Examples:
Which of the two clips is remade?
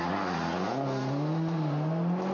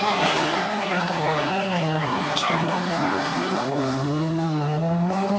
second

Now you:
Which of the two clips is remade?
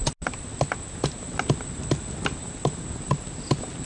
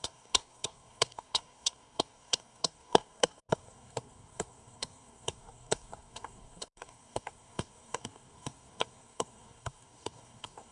second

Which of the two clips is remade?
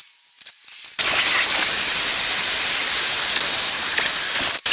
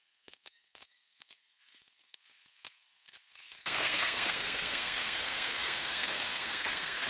second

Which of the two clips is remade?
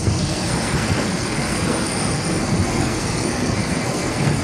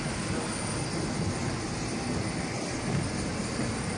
first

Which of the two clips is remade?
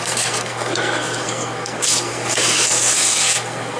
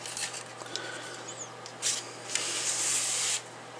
first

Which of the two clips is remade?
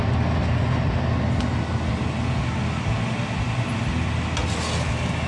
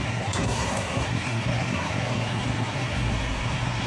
second